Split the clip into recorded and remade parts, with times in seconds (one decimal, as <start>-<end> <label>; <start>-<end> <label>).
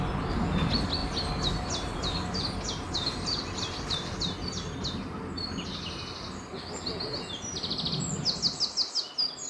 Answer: 0.0-9.5 recorded